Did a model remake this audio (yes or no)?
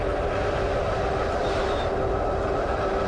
no